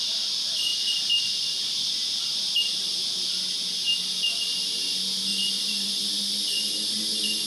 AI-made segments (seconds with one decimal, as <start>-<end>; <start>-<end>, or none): 5.3-7.0